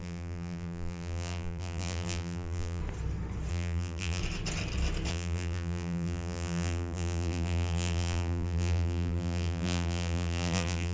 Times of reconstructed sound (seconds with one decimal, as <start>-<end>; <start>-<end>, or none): 0.0-2.8; 3.5-4.2; 5.1-10.9